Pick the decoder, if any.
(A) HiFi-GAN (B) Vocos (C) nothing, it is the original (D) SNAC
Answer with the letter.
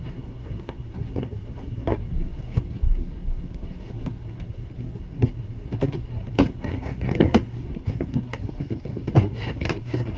D